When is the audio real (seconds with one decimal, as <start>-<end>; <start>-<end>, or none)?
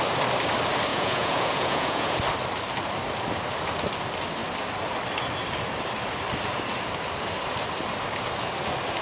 0.0-0.9; 2.2-9.0